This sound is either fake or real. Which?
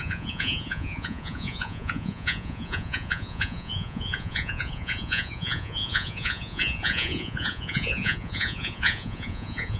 fake